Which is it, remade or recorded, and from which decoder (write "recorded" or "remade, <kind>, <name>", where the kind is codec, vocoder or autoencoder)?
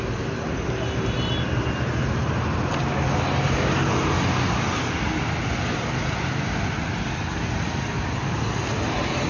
recorded